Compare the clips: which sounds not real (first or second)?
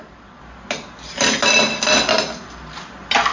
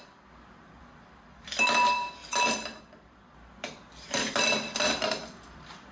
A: second